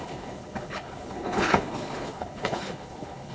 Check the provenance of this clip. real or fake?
fake